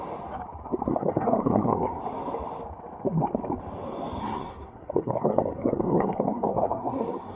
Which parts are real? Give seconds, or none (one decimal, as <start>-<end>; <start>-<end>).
0.0-0.9; 2.0-4.2